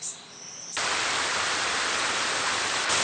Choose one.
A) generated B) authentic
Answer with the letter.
B